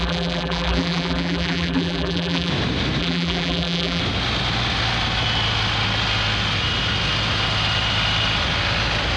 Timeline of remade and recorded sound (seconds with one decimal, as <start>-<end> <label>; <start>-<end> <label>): 0.0-2.5 remade; 2.5-3.0 recorded; 3.0-4.0 remade; 4.0-9.2 recorded